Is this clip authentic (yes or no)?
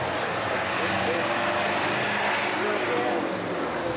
yes